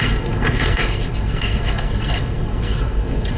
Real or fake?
fake